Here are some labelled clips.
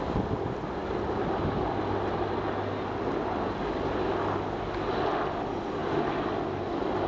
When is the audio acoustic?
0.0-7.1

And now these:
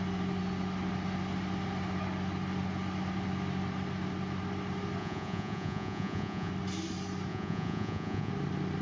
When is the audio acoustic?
0.0-5.0; 6.5-7.3; 8.3-8.8

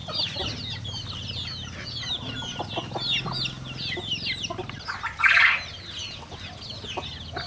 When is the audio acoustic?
0.0-7.5

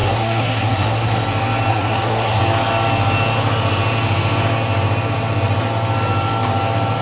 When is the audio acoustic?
1.2-1.7; 2.4-7.0

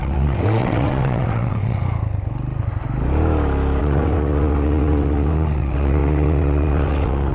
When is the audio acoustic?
1.8-3.8